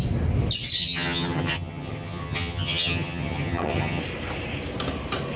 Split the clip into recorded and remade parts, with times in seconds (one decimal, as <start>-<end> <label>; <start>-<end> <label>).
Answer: 0.0-0.8 recorded; 0.8-4.0 remade; 4.0-5.4 recorded